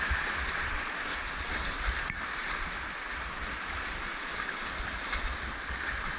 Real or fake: real